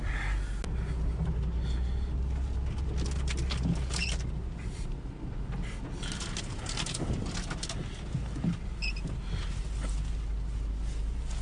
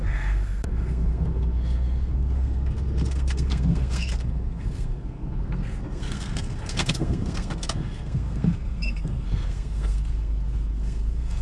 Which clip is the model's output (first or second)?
second